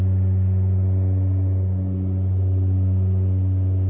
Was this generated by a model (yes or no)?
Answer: no